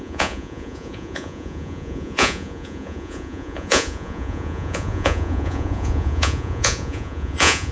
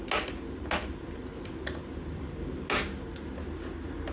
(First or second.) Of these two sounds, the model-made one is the first